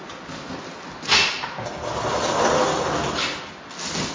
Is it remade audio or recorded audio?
recorded